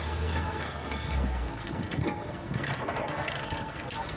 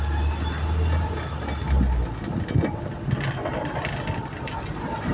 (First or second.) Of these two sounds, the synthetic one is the first